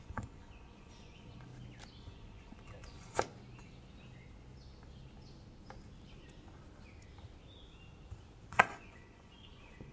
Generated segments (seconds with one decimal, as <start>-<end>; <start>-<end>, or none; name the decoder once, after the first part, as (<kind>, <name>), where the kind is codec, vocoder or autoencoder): 0.0-1.5 (vocoder, Vocos); 2.0-3.3; 8.5-9.9